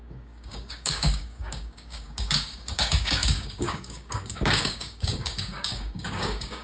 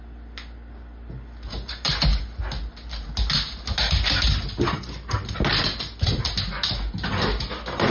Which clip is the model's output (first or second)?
first